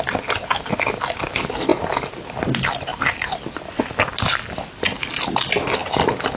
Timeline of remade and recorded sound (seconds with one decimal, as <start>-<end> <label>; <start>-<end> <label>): 0.0-6.4 recorded